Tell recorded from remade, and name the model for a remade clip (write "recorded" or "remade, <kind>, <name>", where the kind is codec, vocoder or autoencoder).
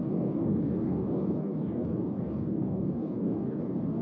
remade, codec, DAC